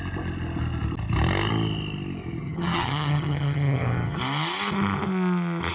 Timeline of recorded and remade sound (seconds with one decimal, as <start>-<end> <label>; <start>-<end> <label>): 0.0-2.4 recorded; 2.4-4.2 remade; 4.2-5.7 recorded